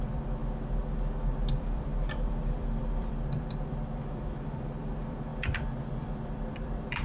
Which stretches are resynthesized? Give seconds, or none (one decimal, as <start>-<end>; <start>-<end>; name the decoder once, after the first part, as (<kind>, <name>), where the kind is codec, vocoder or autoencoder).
0.0-0.4 (vocoder, BigVGAN v2); 1.5-5.3; 5.8-7.0